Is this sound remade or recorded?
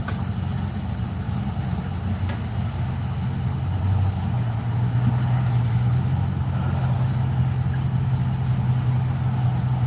recorded